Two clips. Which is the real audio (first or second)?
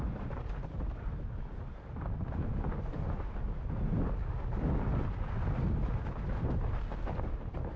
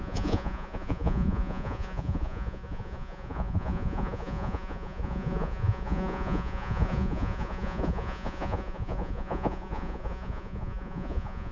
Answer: first